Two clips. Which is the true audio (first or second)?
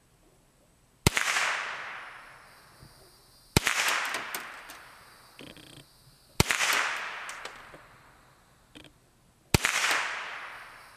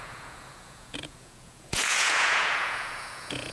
first